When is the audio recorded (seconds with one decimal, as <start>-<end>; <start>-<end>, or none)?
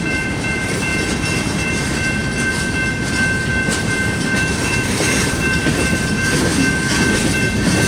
2.2-3.5; 6.5-7.9